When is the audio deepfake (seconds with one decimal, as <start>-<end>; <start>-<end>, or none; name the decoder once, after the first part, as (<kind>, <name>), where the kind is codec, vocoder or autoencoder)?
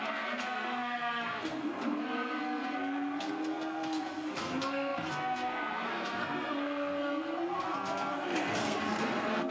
0.0-9.5 (codec, SNAC)